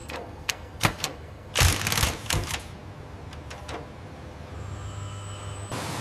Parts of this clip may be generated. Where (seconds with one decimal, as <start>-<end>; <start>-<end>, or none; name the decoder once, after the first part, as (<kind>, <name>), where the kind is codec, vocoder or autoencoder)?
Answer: 0.0-1.5 (codec, SNAC)